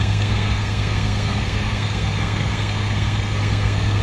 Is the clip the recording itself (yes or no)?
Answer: no